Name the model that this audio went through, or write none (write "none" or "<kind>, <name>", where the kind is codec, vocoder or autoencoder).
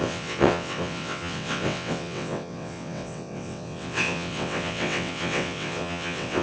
vocoder, WaveNeXt